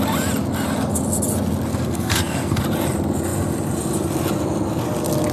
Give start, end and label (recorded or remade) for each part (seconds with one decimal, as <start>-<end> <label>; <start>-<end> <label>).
0.0-1.7 recorded; 1.7-2.6 remade; 2.6-5.3 recorded